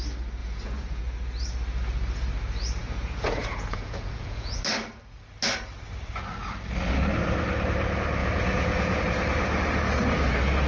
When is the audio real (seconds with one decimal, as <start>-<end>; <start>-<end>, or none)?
0.0-0.4; 1.0-2.8; 4.6-8.2; 9.0-10.7

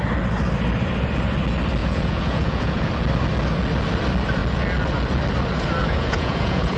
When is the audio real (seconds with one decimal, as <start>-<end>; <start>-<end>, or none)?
0.0-1.8; 2.9-5.8

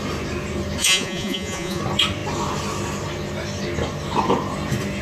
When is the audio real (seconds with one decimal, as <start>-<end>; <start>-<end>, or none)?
0.0-0.8; 1.8-5.0

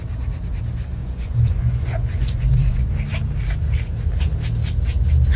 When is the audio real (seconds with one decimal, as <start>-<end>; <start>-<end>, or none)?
0.0-1.0; 2.9-5.4